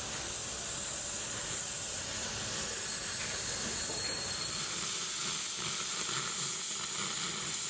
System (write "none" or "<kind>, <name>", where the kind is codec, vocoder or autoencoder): none